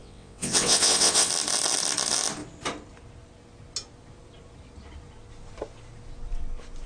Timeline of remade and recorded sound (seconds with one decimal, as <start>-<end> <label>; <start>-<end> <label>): 0.0-1.3 remade; 1.3-6.9 recorded